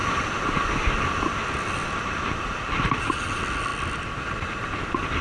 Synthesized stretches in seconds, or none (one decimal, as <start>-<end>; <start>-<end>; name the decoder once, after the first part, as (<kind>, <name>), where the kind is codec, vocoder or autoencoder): none